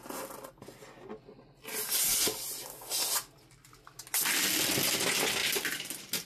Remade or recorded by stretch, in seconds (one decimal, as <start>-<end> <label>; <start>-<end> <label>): 0.0-5.4 recorded; 5.4-6.3 remade